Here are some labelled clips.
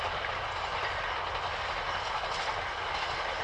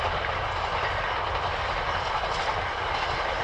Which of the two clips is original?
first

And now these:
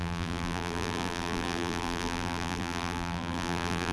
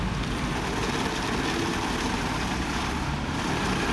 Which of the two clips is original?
second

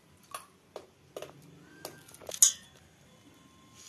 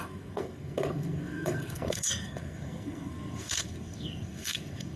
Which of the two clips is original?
first